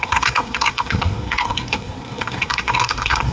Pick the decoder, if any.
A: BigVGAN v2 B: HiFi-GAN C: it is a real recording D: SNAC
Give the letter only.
D